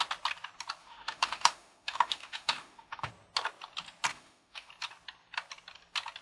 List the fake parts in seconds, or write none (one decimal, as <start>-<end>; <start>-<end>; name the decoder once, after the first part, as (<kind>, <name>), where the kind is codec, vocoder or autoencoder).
0.8-3.1 (autoencoder, DAC-VAE); 4.1-4.7